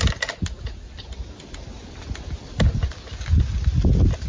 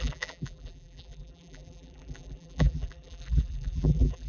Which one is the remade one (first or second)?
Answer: second